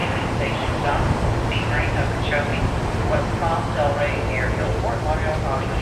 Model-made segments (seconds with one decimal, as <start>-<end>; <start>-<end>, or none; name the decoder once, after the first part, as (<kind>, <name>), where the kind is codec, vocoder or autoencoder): 0.0-3.4 (vocoder, BigVGAN v2); 4.6-5.8